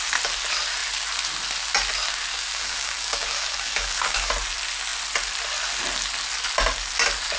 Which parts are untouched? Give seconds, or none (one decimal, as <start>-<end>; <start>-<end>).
0.0-2.3; 4.3-7.4